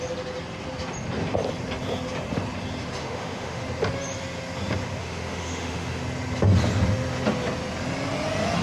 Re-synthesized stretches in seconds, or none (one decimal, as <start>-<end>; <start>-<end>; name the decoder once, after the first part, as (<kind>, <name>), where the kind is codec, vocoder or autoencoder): 3.0-3.6 (autoencoder, DAC-VAE); 5.0-6.0